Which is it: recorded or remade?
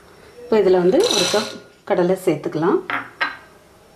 recorded